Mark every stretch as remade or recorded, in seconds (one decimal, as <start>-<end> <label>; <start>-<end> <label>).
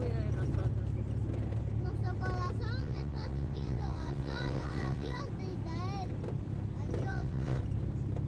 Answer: 0.0-2.8 recorded; 2.8-5.2 remade; 5.2-7.1 recorded; 7.1-7.6 remade; 7.6-8.3 recorded